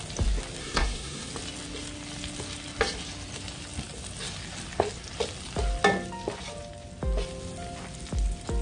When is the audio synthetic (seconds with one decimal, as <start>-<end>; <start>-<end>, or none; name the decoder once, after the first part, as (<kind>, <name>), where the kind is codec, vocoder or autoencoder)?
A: 0.6-1.3 (codec, SNAC)